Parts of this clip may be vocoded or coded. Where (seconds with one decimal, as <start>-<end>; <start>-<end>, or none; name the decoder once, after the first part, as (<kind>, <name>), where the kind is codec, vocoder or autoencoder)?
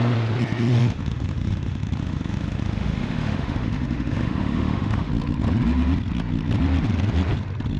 0.8-5.1 (autoencoder, DAC-VAE)